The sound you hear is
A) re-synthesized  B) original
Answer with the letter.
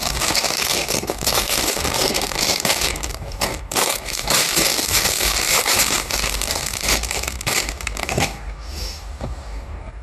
A